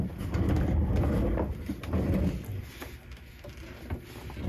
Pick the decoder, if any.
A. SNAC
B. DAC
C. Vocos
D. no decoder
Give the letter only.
D